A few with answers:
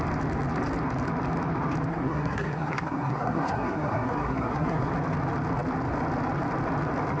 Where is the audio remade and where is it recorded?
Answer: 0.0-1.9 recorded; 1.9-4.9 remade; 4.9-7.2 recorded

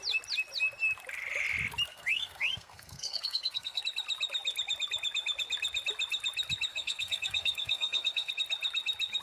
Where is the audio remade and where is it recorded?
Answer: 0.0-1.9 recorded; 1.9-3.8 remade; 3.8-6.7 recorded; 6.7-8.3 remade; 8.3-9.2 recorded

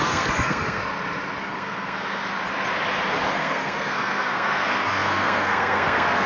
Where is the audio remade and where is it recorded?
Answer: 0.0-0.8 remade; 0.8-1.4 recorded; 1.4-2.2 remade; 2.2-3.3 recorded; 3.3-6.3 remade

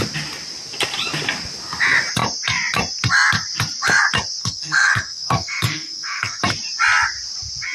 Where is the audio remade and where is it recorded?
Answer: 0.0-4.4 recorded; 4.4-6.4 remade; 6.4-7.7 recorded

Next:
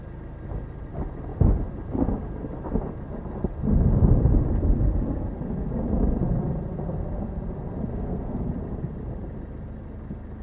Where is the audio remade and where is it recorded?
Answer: 0.0-7.9 recorded; 7.9-8.4 remade; 8.4-10.4 recorded

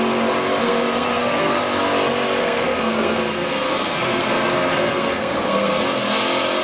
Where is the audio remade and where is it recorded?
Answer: 0.0-0.6 recorded; 0.6-1.6 remade; 1.6-2.4 recorded; 2.4-5.8 remade; 5.8-6.6 recorded